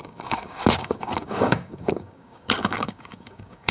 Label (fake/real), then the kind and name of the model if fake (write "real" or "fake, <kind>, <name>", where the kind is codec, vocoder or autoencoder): fake, codec, DAC